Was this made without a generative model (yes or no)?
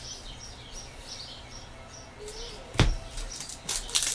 no